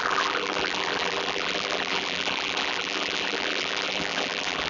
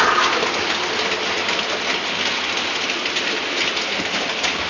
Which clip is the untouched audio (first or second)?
second